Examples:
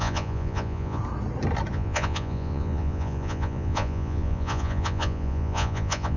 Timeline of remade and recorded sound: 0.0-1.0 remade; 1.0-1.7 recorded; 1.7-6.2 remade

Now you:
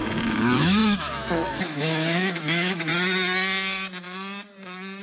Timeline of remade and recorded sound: 0.0-2.9 remade; 2.9-5.0 recorded

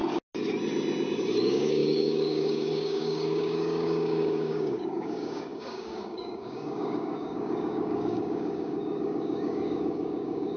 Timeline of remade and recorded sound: 0.0-1.4 recorded; 1.4-10.6 remade